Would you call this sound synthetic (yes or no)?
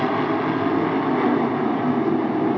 no